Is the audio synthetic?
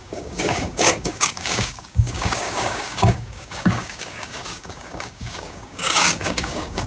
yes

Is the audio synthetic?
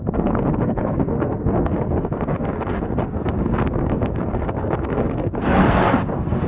yes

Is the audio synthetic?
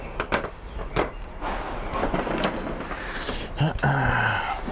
no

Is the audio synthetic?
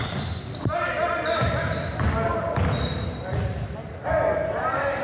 no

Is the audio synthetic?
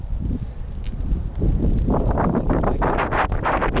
no